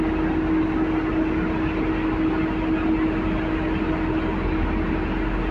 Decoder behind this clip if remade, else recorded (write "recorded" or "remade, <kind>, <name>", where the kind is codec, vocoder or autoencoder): recorded